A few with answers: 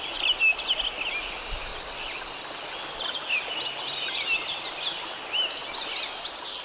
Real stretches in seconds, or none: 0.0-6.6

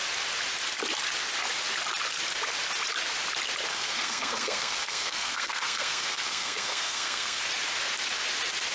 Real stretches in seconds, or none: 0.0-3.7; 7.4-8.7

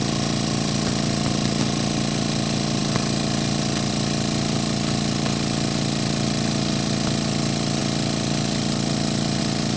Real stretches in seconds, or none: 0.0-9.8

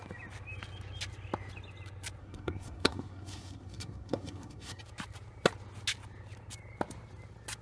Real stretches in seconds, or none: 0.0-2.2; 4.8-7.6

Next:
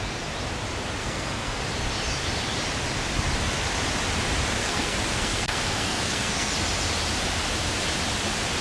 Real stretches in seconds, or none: 0.0-1.0; 1.6-4.6; 6.5-8.6

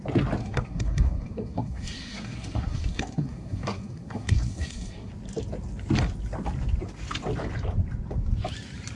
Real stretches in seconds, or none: 0.0-0.4; 5.1-9.0

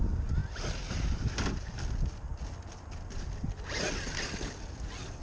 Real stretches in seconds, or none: 0.0-5.2

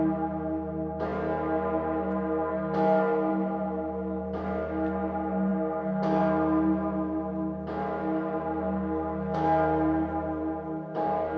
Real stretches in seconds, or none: 0.0-11.4